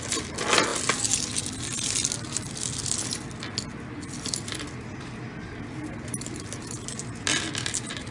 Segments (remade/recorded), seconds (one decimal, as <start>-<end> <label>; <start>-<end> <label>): 0.0-8.1 recorded